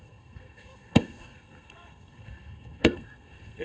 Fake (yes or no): yes